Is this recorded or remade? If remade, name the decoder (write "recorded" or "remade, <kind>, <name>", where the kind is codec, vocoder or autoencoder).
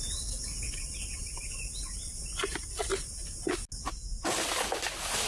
recorded